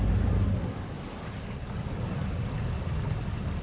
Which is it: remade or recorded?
recorded